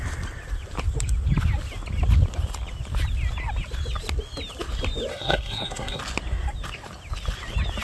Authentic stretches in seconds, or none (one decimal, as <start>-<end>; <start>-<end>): 0.0-5.1; 6.0-7.8